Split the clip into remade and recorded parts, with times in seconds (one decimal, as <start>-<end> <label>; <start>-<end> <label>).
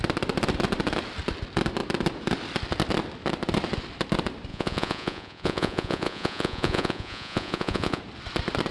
0.0-4.5 recorded; 4.5-8.0 remade; 8.0-8.7 recorded